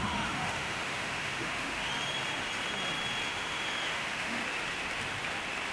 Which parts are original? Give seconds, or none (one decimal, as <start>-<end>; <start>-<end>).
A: 1.9-3.3; 4.4-5.7